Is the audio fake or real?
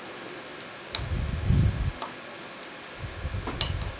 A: real